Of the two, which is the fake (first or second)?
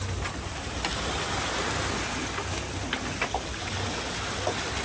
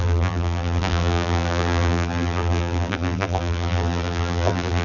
second